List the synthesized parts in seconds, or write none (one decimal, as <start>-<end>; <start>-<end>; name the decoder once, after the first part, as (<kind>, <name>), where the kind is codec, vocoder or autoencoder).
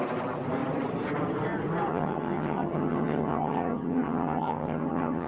1.9-5.3 (vocoder, HiFi-GAN)